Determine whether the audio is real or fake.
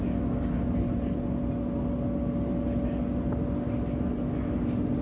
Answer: real